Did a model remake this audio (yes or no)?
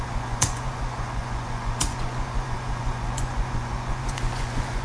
yes